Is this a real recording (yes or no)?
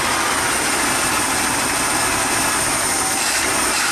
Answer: yes